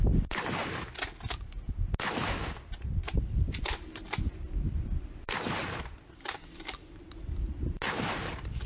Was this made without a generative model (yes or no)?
yes